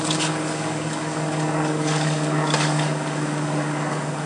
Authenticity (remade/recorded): remade